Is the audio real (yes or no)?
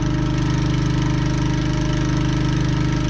yes